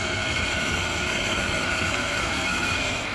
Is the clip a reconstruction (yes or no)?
yes